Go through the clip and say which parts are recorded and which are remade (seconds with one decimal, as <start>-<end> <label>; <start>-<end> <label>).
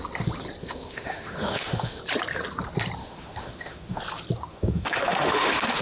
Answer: 0.0-0.6 recorded; 0.6-2.0 remade; 2.0-3.0 recorded; 3.0-4.0 remade; 4.0-4.5 recorded; 4.5-5.8 remade